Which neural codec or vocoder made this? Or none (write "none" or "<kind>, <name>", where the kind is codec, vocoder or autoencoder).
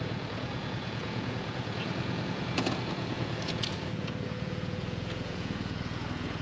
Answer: vocoder, Vocos